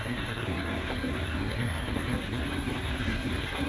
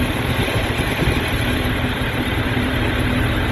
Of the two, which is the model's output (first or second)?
first